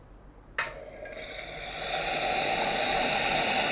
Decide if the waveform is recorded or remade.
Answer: recorded